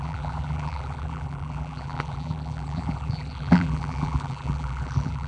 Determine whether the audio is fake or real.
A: fake